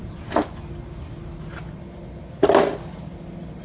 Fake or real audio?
real